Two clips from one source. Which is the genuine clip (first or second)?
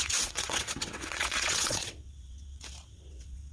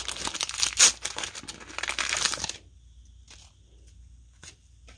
second